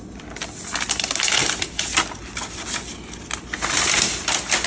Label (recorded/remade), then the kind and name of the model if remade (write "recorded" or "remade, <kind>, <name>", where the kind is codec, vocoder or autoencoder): recorded